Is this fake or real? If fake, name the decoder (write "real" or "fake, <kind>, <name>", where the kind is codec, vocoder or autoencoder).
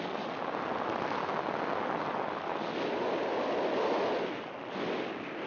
real